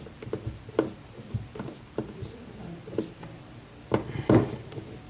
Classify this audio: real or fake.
real